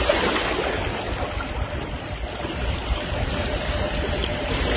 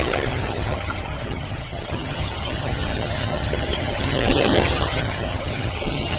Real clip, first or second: first